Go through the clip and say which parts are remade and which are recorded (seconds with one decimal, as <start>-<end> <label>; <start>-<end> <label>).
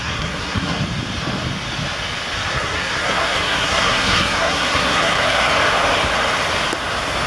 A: 0.0-0.8 remade; 0.8-2.5 recorded; 2.5-5.5 remade; 5.5-7.3 recorded